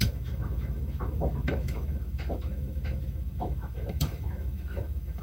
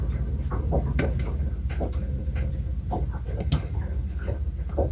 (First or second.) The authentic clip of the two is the second